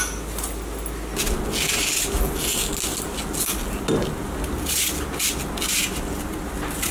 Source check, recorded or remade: recorded